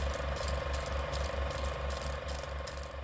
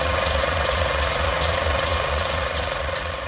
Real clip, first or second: first